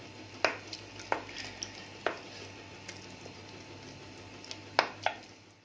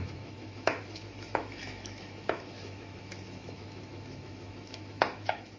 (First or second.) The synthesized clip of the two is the second